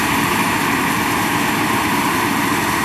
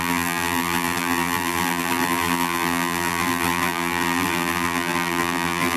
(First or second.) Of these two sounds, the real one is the first